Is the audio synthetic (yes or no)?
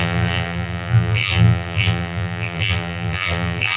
yes